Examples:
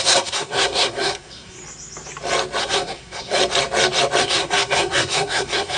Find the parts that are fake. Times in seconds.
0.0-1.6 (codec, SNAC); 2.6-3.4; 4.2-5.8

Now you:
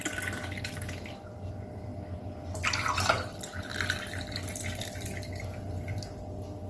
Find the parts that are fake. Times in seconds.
none

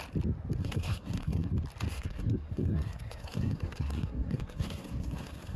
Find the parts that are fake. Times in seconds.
0.6-1.5 (codec, SNAC); 1.9-5.6